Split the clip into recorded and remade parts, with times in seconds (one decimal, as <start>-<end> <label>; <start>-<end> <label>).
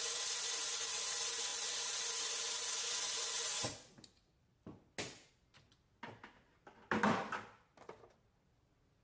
0.0-9.0 recorded